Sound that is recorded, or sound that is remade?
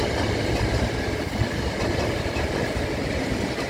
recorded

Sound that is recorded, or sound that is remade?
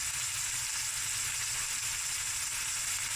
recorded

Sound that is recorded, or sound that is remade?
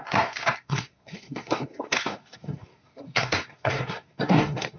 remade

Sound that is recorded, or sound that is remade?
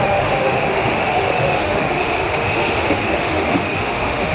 remade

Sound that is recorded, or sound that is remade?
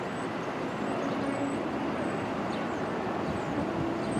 recorded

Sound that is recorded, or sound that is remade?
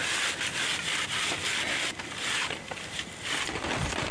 recorded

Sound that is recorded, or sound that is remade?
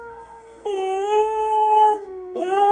remade